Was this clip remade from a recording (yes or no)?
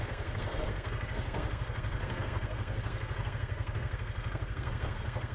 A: yes